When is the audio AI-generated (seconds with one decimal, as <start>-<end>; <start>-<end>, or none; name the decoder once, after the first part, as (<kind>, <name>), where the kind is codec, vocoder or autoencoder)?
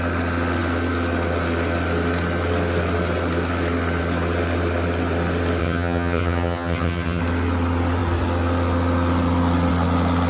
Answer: 5.6-7.2 (vocoder, HiFi-GAN)